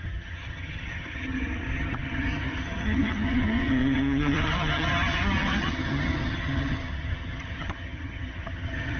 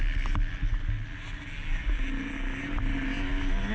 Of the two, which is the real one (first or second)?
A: second